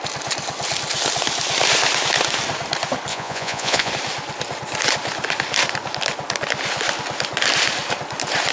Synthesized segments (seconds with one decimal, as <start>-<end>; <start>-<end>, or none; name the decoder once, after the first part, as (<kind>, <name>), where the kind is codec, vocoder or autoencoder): 3.1-3.9 (vocoder, Vocos)